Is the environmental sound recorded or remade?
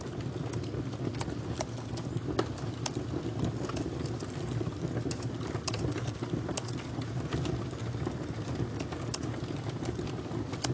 recorded